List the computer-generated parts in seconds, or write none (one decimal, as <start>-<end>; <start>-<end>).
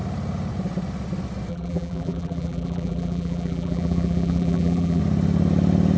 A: 1.5-5.0